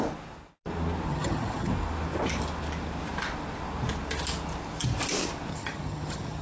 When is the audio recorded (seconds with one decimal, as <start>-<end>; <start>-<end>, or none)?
0.0-1.1; 1.7-5.5